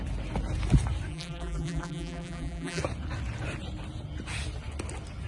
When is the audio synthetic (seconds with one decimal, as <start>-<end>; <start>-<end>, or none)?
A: 1.1-2.8